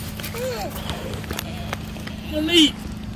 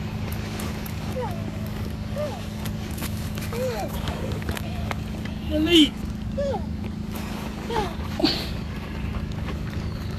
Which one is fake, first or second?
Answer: second